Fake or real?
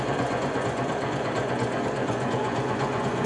fake